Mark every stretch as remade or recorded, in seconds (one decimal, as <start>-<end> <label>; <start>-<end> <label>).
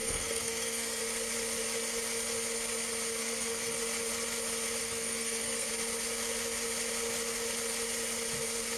0.0-1.0 remade; 1.0-3.2 recorded; 3.2-3.8 remade; 3.8-4.8 recorded; 4.8-5.7 remade; 5.7-8.8 recorded